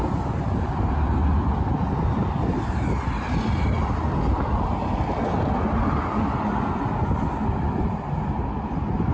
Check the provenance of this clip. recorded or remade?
recorded